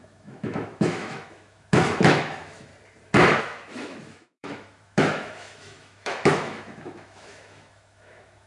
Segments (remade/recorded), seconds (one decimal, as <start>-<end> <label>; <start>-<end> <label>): 0.0-2.7 remade; 2.7-3.4 recorded; 3.4-8.5 remade